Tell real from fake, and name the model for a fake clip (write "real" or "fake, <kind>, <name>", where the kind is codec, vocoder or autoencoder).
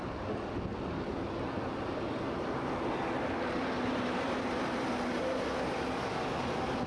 real